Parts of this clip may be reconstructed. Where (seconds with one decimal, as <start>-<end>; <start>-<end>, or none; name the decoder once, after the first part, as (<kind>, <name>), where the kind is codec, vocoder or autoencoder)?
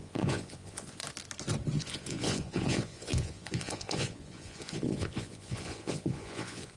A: 0.0-1.0 (vocoder, Vocos); 1.8-6.8